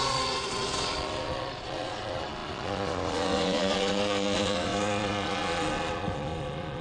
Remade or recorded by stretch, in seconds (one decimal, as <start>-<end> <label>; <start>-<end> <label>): 0.0-6.8 remade